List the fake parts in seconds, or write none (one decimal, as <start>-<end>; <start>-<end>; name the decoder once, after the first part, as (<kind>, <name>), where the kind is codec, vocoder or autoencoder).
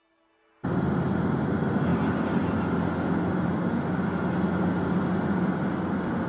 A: none